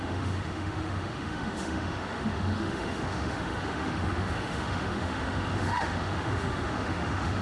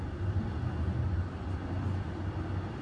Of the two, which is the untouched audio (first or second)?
second